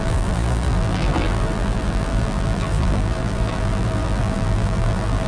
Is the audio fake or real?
fake